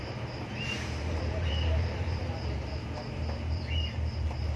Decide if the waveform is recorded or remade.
remade